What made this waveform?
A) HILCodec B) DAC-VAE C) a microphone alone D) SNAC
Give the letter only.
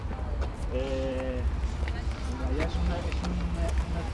C